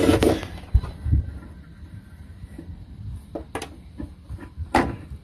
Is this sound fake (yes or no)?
no